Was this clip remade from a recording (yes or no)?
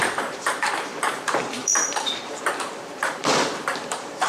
yes